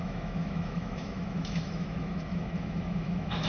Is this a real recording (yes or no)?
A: no